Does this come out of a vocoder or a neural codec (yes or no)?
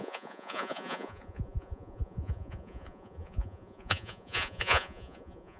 yes